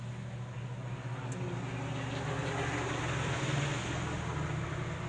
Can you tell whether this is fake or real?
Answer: real